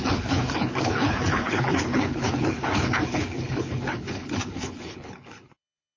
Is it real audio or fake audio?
fake